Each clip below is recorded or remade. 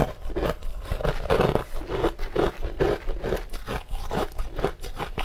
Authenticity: recorded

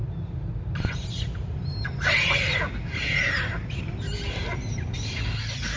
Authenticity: recorded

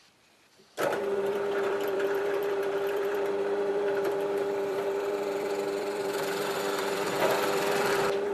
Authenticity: remade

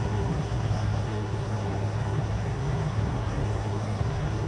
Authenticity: remade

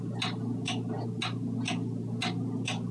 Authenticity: recorded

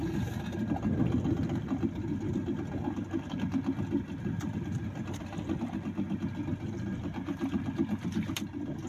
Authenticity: recorded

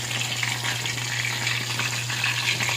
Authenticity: recorded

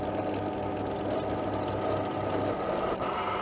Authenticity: recorded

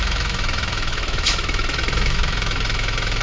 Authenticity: remade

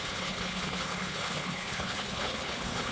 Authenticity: remade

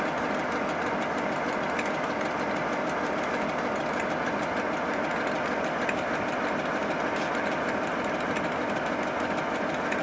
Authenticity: recorded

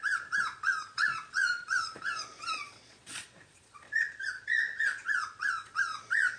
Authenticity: remade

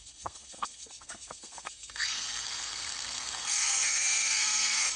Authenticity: remade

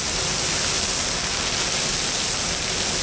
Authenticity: recorded